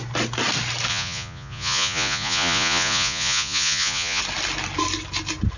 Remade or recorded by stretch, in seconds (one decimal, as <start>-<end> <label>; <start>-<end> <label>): 0.0-0.9 recorded; 0.9-4.2 remade; 4.2-5.6 recorded